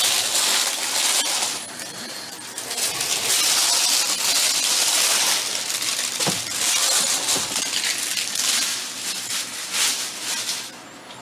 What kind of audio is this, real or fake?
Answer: real